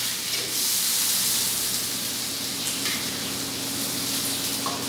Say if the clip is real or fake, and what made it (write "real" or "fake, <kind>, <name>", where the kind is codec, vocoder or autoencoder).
real